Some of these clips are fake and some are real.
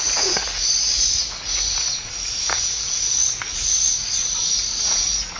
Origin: fake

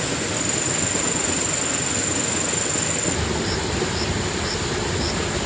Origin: real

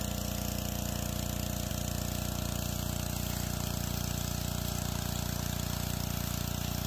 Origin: real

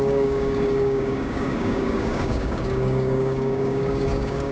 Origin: fake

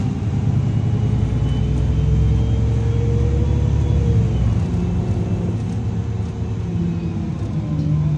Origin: real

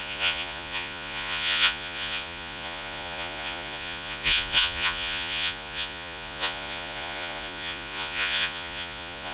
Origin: fake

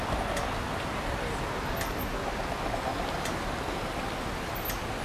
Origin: real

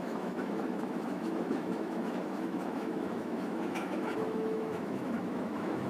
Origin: fake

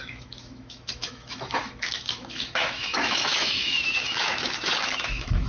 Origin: fake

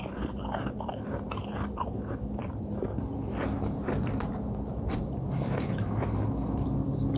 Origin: fake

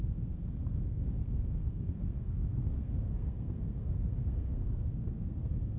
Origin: fake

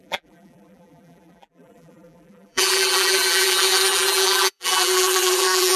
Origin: fake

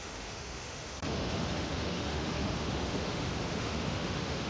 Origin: fake